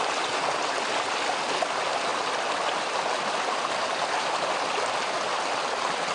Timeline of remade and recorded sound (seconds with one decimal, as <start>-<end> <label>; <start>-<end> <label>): 0.0-6.1 recorded